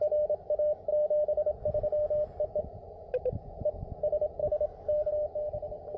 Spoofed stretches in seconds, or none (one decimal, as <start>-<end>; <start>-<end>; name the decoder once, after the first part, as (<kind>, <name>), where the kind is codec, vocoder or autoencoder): 4.4-5.1 (codec, DAC)